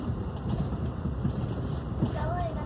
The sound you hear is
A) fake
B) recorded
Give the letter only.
A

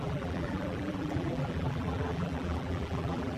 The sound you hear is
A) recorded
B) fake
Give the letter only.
B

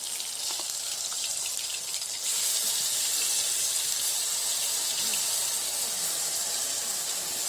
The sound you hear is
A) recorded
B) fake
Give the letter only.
A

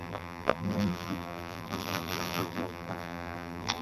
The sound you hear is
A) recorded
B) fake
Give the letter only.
B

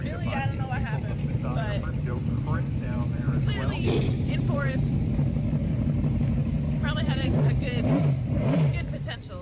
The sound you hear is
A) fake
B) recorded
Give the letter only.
A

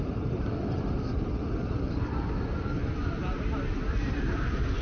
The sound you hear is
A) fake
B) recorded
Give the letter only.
B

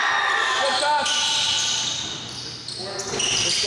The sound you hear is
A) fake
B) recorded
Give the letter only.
B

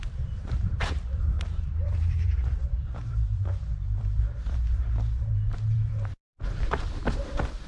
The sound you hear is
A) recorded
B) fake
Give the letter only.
B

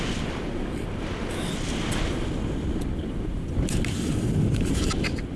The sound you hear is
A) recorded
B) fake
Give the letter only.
B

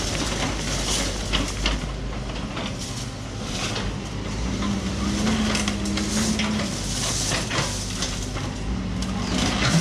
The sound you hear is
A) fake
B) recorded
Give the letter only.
B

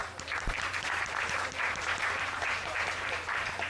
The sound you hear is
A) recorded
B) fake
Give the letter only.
B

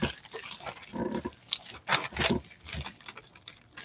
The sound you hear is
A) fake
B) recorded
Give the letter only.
B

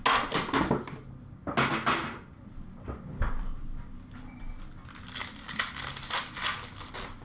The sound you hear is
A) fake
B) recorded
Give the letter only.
B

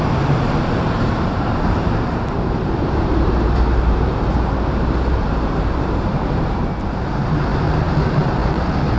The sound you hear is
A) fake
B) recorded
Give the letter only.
A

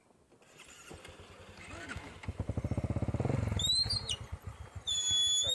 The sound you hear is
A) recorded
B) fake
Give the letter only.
A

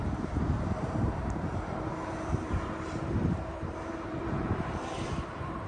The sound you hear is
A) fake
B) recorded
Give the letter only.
A